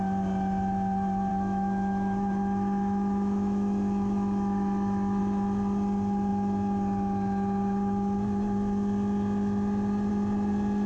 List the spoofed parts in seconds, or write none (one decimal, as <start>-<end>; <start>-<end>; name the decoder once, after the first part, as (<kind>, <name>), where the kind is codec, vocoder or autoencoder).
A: 1.3-5.2 (autoencoder, DAC-VAE)